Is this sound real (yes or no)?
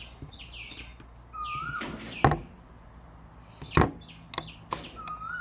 yes